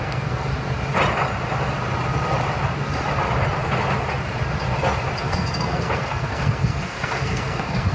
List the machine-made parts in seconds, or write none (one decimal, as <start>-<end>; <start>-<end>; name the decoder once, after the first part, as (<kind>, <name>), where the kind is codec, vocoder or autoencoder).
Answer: 0.0-0.5 (codec, SNAC); 5.2-7.9